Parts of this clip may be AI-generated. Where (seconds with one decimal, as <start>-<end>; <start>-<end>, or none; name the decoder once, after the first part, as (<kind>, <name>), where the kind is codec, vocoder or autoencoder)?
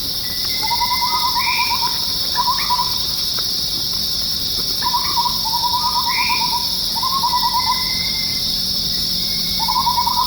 2.8-3.4 (vocoder, BigVGAN v2); 4.3-5.3; 8.3-9.7